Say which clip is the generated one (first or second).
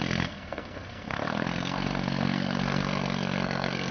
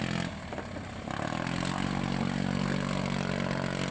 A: first